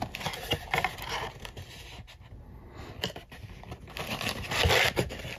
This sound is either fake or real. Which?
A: real